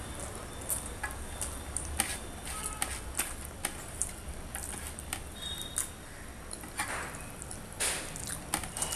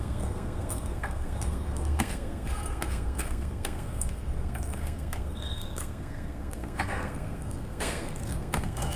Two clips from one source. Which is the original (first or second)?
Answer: first